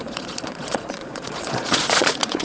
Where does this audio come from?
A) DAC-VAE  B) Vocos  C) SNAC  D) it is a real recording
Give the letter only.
B